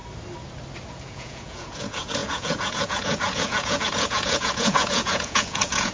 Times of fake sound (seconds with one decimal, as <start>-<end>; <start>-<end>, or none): 0.9-5.9